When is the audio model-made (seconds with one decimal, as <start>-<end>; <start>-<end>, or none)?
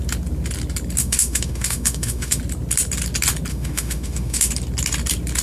1.0-2.4; 3.5-4.5